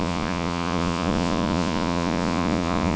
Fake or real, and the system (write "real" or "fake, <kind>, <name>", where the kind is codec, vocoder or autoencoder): fake, vocoder, Vocos